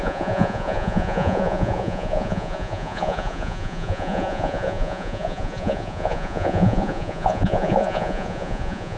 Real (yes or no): no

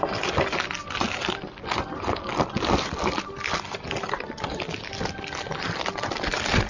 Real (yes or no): yes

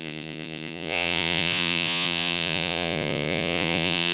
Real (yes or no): no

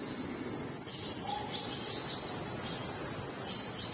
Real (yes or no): yes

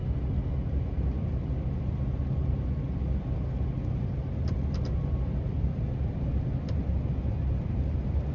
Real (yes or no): yes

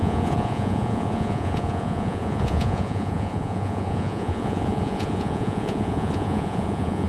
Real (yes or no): no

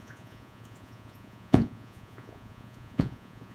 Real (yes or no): no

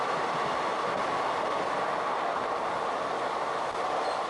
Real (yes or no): yes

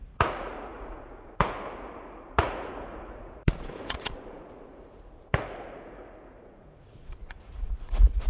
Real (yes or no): no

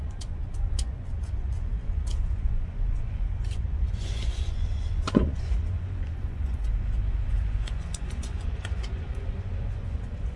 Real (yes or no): no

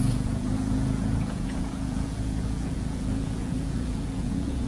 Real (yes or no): no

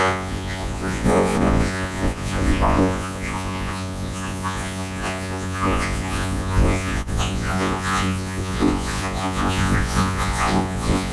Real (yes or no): no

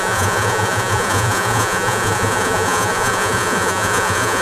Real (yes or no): no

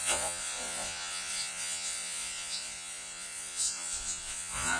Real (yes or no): no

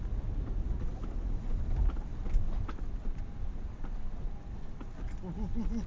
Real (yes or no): yes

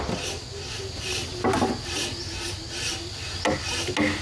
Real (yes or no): yes